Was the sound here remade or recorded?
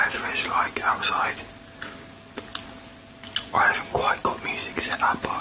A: recorded